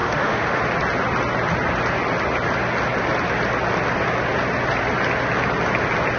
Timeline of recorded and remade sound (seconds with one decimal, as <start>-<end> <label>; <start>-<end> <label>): 0.0-0.6 remade; 0.6-6.2 recorded